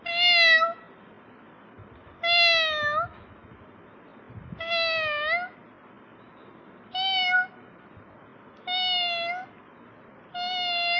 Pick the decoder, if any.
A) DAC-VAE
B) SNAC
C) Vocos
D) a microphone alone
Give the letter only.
D